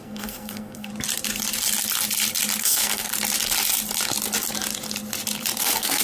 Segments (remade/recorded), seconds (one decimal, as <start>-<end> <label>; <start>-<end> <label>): 0.0-0.9 remade; 0.9-2.6 recorded; 2.6-3.1 remade; 3.1-5.6 recorded; 5.6-6.0 remade